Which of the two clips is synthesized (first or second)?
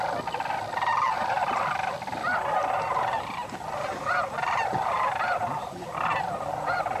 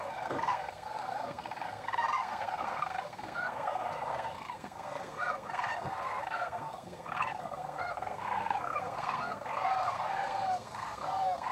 second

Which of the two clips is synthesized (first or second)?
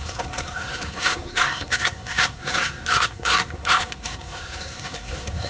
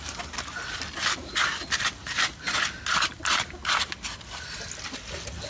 first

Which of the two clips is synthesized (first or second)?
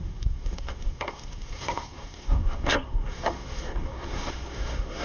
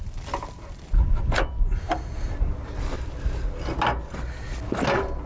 first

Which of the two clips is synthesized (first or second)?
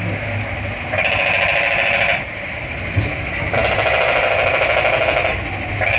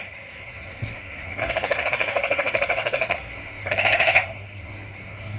second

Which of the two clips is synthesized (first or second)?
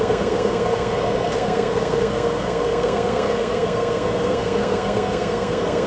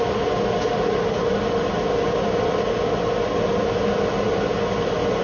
first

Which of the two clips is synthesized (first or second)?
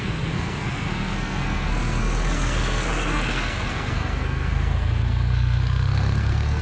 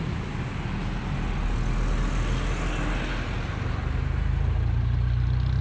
first